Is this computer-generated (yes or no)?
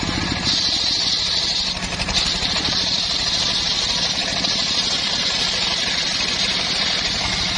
yes